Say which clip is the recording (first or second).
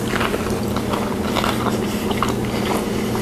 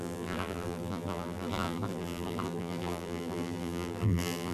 first